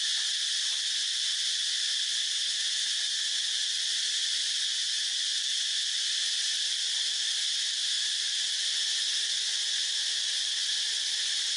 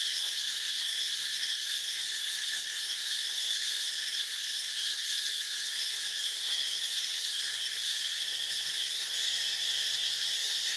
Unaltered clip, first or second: first